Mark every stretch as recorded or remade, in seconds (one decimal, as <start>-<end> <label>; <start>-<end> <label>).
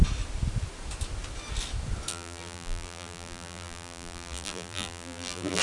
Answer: 0.0-2.1 recorded; 2.1-5.6 remade